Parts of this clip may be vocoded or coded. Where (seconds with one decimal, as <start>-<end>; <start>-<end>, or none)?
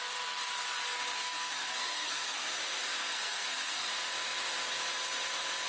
1.2-2.5; 3.0-3.9